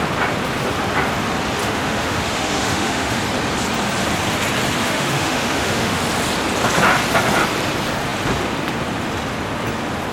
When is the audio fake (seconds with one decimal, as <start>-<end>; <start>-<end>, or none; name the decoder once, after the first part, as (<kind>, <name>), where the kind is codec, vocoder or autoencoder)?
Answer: 1.6-3.2 (autoencoder, DAC-VAE); 4.8-6.0